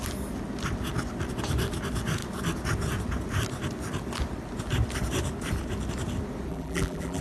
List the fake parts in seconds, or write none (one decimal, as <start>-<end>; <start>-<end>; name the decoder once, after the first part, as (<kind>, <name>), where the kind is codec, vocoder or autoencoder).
6.5-7.2 (vocoder, BigVGAN v2)